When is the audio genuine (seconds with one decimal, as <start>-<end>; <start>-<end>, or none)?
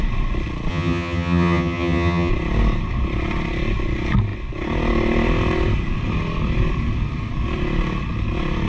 0.0-0.7; 2.3-8.7